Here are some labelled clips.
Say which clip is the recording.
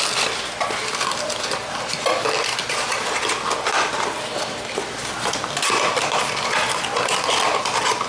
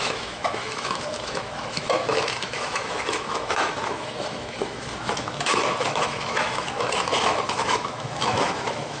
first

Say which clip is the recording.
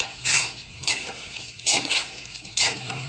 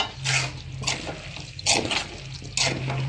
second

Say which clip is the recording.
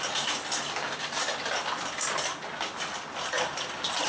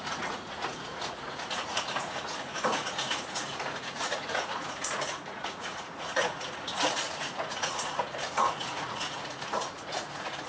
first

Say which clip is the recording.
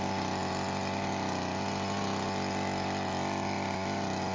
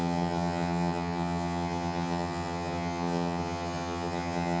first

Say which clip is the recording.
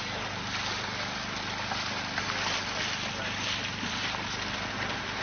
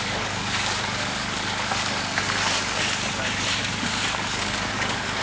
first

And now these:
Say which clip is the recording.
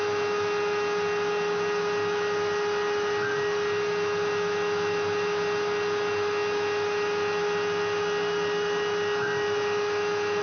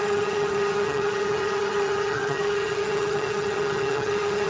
first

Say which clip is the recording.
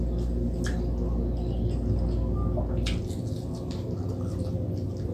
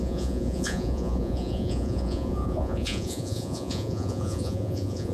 first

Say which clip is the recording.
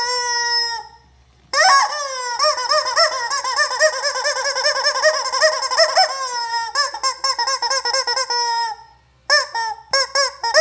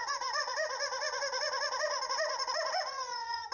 first